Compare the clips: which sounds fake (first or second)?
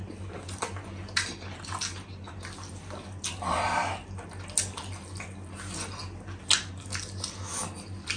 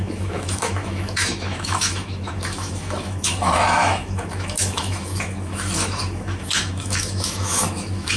second